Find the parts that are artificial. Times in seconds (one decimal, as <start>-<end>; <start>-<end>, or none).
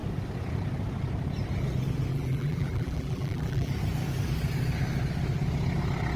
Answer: 2.1-3.7